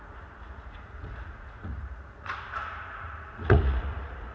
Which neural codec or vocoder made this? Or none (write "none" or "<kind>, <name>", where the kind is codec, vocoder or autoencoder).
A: vocoder, Vocos